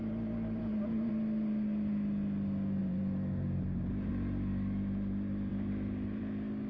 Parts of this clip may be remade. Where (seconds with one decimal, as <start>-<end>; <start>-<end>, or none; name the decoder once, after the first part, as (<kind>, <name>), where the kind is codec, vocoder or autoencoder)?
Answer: 0.0-1.1 (vocoder, BigVGAN v2); 2.8-4.1; 5.5-6.2